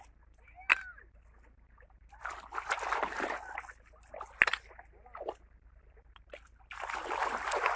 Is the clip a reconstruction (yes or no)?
no